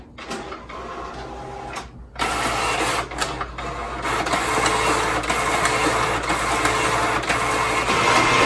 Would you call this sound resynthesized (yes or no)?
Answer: no